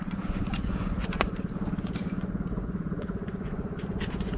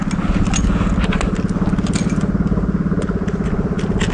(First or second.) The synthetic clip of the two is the first